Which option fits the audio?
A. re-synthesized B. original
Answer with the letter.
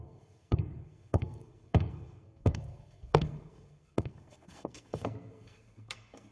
A